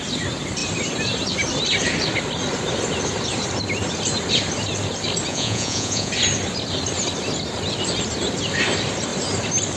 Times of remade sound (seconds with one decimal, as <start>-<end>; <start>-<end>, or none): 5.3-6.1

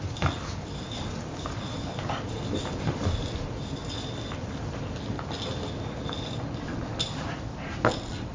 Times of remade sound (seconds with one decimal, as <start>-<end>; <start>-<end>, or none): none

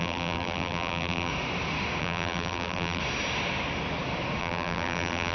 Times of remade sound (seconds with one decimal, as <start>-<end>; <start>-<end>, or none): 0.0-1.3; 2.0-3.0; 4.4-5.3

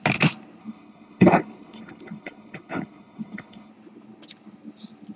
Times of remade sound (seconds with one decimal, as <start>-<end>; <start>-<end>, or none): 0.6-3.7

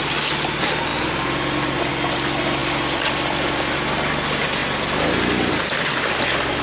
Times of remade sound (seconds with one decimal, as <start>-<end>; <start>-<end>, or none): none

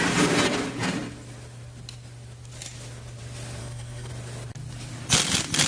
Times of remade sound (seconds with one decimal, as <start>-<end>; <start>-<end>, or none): 3.6-4.1